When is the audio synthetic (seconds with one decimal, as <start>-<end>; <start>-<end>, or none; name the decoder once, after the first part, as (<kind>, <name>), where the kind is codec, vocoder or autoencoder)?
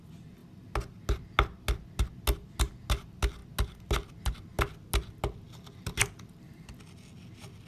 none